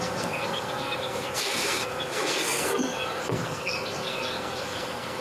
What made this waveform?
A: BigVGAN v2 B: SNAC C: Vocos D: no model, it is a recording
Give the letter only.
B